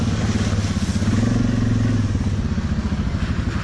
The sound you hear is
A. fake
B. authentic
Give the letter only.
B